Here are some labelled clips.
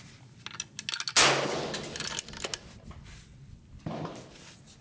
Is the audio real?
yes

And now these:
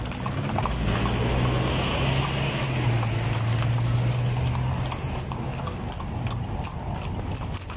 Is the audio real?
yes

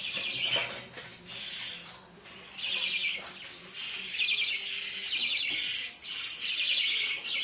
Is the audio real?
yes